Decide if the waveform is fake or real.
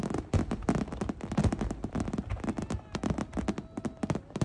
real